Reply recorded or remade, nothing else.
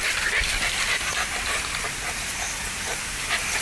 recorded